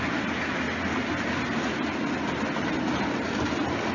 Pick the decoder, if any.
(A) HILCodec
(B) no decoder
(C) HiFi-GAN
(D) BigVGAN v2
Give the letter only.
B